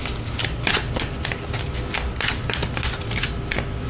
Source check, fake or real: real